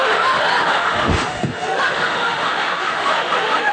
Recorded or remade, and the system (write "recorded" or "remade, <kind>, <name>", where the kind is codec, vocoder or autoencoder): remade, autoencoder, DAC-VAE